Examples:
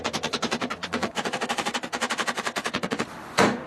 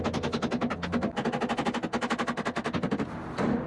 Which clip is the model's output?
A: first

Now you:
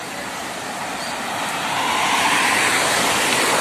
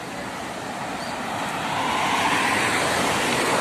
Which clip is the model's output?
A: first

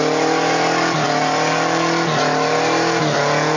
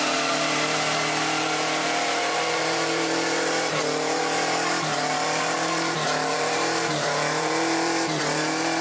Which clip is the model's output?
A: second